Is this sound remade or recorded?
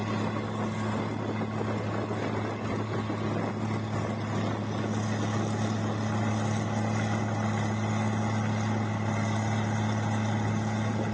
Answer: recorded